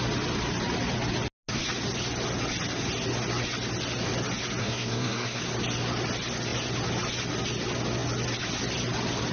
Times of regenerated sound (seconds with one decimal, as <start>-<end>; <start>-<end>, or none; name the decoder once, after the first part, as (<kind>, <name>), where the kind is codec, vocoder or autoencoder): 4.6-5.4 (codec, SNAC)